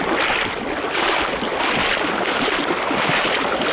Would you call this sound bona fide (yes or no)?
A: yes